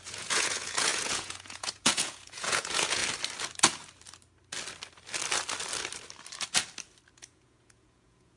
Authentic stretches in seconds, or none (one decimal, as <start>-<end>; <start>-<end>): 3.0-7.1